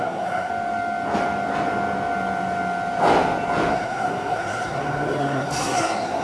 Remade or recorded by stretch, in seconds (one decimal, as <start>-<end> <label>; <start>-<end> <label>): 0.0-0.5 remade; 0.5-3.7 recorded; 3.7-6.2 remade